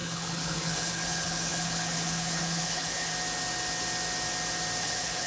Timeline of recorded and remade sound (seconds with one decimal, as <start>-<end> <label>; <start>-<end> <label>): 0.0-3.1 remade; 3.1-4.8 recorded; 4.8-5.3 remade